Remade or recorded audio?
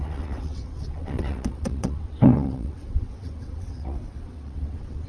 remade